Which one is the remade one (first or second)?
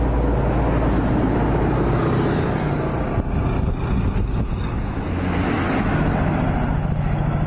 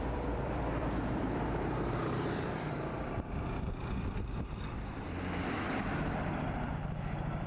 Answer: second